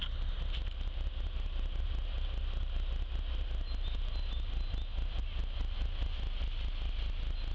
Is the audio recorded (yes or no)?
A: yes